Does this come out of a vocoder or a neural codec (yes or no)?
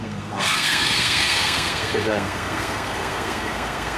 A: yes